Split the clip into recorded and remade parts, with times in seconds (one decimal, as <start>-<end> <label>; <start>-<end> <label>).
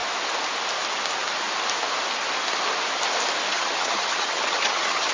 0.0-3.5 recorded; 3.5-5.1 remade